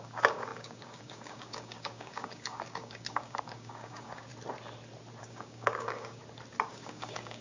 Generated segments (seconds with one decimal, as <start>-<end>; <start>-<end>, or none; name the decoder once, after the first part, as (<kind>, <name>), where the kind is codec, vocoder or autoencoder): 0.0-4.3 (codec, DAC); 5.2-6.2; 6.7-7.4